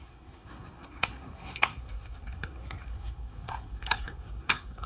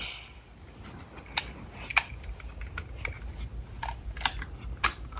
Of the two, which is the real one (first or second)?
second